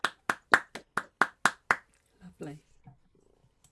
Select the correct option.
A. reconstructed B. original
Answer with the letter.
B